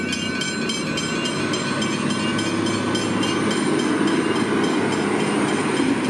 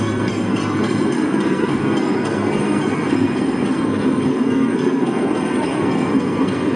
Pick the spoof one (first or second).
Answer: second